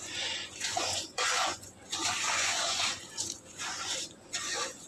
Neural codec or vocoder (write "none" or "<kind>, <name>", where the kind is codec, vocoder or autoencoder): vocoder, Vocos